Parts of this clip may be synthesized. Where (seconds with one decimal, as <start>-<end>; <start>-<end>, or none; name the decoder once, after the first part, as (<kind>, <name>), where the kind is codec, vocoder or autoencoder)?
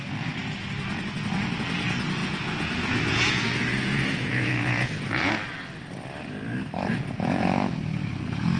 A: 2.2-5.3 (vocoder, Vocos); 6.9-7.7